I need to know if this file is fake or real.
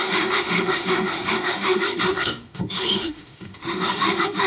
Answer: fake